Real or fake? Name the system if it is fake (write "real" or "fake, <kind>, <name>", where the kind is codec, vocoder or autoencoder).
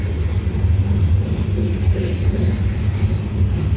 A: real